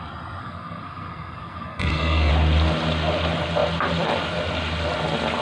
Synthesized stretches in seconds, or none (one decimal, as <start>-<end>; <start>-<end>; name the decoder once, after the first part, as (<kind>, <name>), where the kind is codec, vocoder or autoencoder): 0.4-2.3 (codec, SNAC)